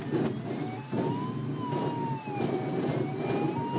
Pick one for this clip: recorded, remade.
recorded